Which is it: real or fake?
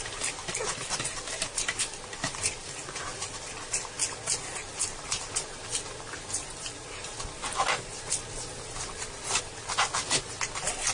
real